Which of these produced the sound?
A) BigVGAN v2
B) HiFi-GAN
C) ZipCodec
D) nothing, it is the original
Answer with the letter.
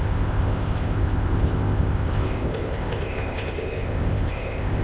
C